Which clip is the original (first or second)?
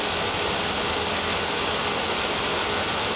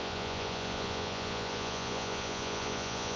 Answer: first